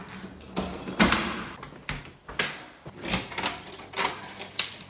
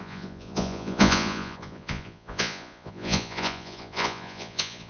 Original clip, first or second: first